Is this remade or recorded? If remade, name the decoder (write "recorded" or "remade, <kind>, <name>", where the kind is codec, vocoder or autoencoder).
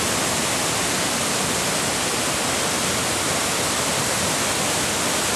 recorded